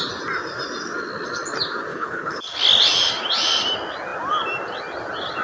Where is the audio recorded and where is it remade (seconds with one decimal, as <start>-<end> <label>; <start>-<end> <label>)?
0.0-1.9 recorded; 1.9-2.4 remade; 2.4-5.4 recorded